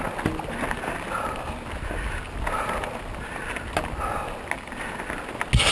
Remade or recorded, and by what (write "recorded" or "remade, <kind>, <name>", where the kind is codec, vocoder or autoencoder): recorded